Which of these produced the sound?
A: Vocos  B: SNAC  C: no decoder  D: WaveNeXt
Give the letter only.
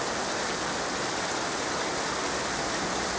C